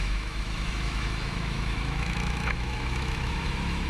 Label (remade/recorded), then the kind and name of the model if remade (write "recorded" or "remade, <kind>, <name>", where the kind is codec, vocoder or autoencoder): remade, autoencoder, DAC-VAE